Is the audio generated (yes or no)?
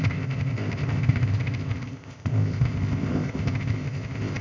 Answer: yes